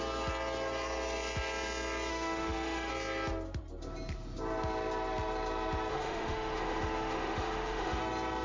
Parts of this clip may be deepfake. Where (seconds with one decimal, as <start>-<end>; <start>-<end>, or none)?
2.1-2.9; 5.9-8.0

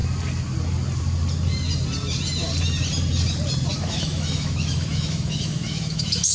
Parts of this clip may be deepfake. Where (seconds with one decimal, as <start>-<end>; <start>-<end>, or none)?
3.8-6.3

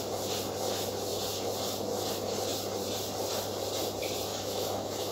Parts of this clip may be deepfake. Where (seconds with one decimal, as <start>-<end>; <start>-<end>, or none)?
4.3-5.1

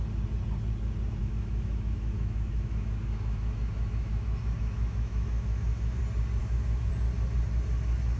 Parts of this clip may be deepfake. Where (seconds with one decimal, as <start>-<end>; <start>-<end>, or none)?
1.2-6.0; 6.4-6.9

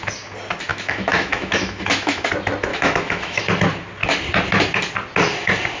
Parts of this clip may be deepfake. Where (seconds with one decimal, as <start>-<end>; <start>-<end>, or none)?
0.7-2.3; 2.7-3.4

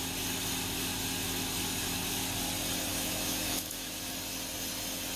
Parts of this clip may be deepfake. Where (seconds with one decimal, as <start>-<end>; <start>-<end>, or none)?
2.9-4.1

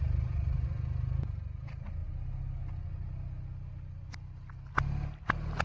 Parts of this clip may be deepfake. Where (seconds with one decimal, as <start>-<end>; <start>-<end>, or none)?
none

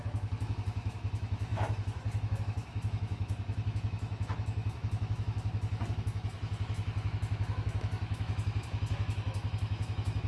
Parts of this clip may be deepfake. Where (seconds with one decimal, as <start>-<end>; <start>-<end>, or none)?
0.0-10.3